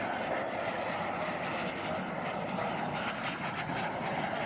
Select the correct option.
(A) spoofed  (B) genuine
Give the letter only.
B